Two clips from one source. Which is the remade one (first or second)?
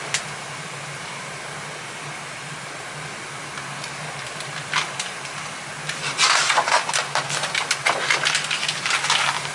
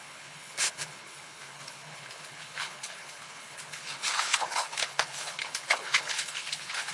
second